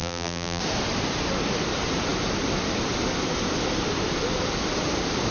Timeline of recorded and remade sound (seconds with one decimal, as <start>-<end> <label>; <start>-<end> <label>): 0.0-0.6 remade; 0.6-5.3 recorded